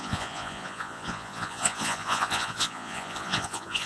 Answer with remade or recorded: remade